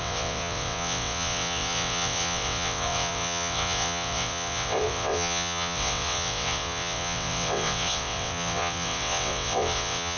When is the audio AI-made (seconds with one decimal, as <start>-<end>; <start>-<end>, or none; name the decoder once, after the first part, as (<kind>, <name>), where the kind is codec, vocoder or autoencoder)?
0.0-10.2 (vocoder, WaveNeXt)